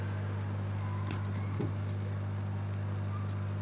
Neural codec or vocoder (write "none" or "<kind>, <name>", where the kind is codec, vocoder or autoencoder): none